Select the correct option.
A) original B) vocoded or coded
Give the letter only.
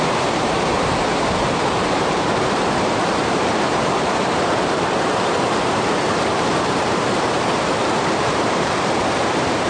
B